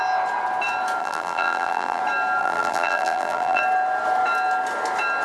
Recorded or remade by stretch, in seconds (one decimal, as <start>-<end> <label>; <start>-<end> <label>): 0.0-1.0 recorded; 1.0-2.0 remade; 2.0-2.4 recorded; 2.4-3.6 remade; 3.6-5.2 recorded